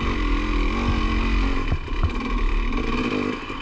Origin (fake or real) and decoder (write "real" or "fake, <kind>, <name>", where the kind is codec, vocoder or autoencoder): real